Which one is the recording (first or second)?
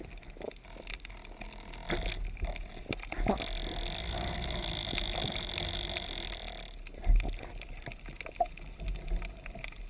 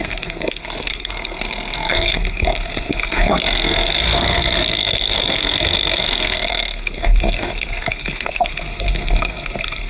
first